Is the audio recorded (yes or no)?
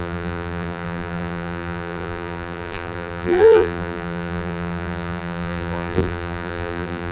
no